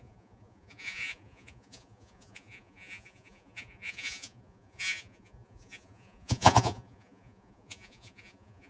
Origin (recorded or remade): remade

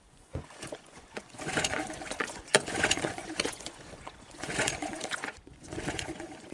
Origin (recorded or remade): remade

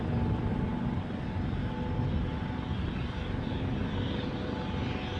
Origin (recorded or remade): recorded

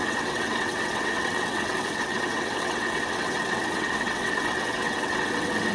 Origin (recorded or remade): remade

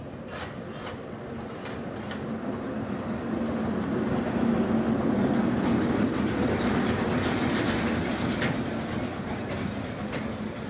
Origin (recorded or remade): recorded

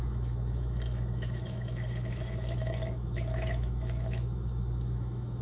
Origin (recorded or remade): remade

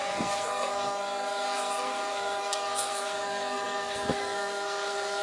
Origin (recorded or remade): remade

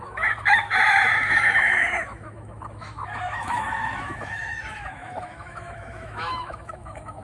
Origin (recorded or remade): remade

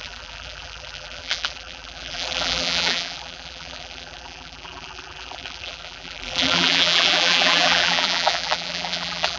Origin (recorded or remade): remade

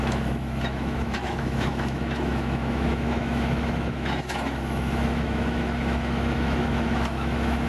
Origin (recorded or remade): remade